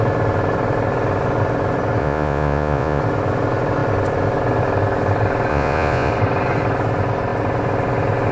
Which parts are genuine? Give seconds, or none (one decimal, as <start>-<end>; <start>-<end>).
0.0-2.0; 3.0-5.5; 6.1-8.3